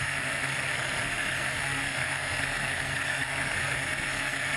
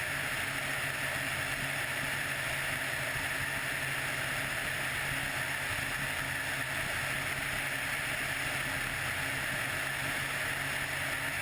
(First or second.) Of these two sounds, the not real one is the first